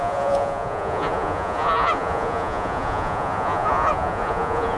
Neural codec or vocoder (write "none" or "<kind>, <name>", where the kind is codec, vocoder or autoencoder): vocoder, Vocos